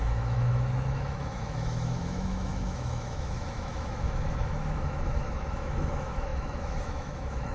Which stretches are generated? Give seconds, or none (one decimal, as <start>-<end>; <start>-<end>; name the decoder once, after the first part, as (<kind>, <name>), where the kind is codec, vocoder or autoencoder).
0.0-7.5 (autoencoder, DAC-VAE)